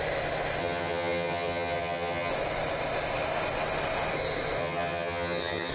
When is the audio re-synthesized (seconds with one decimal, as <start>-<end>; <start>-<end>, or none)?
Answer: 0.6-2.3; 4.6-5.7